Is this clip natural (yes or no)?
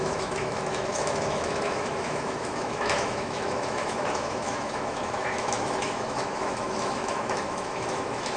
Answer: no